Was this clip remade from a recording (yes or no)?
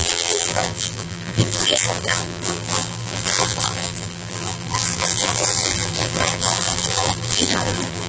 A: yes